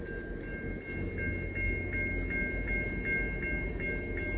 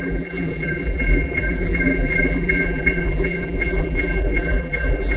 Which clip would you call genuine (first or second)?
first